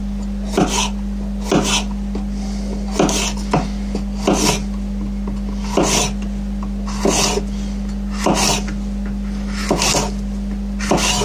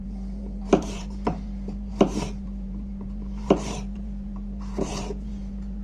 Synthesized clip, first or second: second